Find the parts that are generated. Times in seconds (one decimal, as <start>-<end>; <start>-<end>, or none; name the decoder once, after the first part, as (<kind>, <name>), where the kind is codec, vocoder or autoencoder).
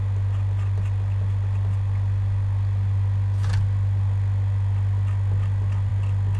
none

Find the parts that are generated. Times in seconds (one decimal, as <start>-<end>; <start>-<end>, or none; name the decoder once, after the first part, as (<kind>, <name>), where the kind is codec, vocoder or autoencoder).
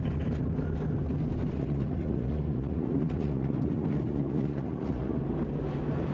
1.5-5.2 (vocoder, Vocos)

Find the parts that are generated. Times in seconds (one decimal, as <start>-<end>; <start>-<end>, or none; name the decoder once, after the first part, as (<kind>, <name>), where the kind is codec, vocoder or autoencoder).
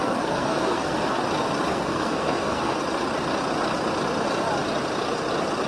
0.0-1.2 (codec, SNAC); 1.7-2.8